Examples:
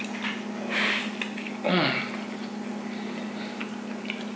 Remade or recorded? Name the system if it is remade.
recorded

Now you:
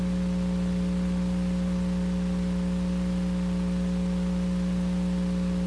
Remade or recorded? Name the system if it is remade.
recorded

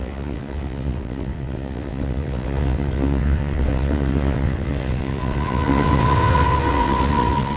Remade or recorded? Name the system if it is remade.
remade, vocoder, WaveNeXt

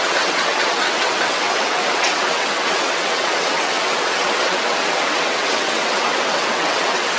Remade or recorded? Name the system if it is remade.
remade, vocoder, WaveNeXt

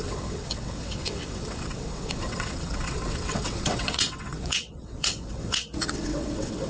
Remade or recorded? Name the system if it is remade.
remade, vocoder, WaveNeXt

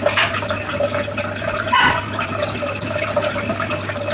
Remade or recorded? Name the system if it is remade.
recorded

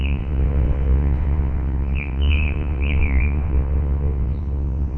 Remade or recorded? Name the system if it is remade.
remade, vocoder, WaveNeXt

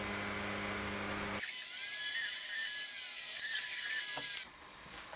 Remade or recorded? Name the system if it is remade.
recorded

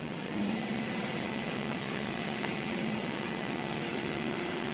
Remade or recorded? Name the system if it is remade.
remade, vocoder, WaveNeXt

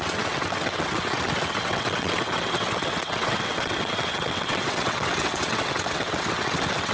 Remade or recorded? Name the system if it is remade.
remade, vocoder, WaveNeXt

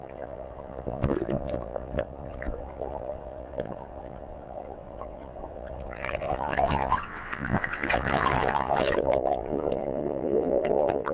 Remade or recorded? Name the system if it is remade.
remade, vocoder, WaveNeXt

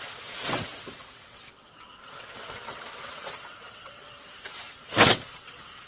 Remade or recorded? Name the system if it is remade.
remade, vocoder, WaveNeXt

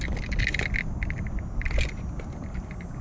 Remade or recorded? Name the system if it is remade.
recorded